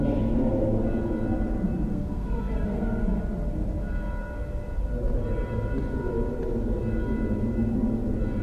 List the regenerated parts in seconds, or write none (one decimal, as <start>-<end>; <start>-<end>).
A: 1.9-3.2